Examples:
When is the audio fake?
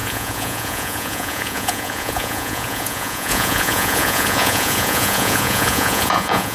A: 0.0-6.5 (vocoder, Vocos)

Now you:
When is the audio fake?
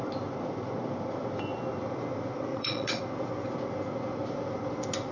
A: 2.5-3.0 (vocoder, Vocos)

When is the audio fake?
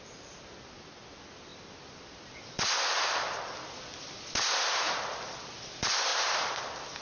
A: none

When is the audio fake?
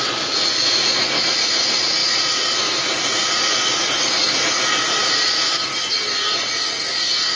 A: 0.0-7.4 (vocoder, Vocos)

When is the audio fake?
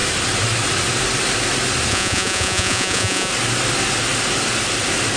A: 1.9-3.3 (vocoder, Vocos)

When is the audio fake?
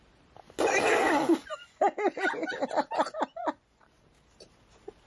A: 1.4-2.7 (vocoder, Vocos); 3.3-4.0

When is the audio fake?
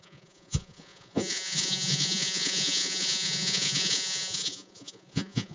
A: 0.0-5.5 (vocoder, Vocos)